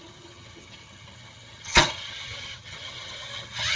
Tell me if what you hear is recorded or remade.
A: remade